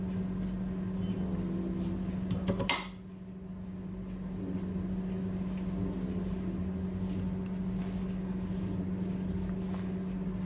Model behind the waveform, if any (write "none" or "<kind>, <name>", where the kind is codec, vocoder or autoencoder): none